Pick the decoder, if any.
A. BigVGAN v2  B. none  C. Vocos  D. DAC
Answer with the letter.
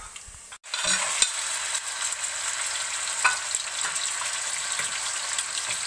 B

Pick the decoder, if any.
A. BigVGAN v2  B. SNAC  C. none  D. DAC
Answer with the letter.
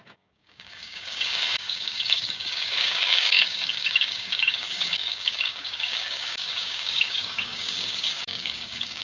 D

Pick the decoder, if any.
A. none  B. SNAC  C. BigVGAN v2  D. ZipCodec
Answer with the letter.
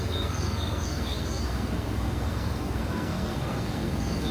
B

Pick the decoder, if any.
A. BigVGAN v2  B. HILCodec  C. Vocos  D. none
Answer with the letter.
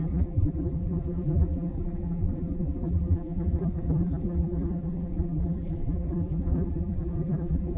A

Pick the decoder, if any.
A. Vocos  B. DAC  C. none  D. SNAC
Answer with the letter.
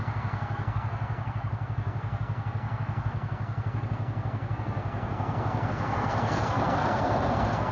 D